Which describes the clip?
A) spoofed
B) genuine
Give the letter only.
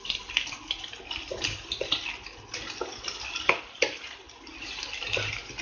B